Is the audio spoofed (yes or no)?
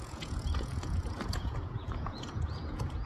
yes